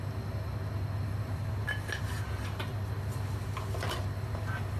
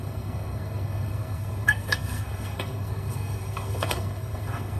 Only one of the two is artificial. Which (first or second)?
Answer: second